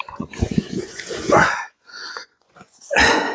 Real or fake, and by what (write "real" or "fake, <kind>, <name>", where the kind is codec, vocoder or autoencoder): fake, vocoder, Vocos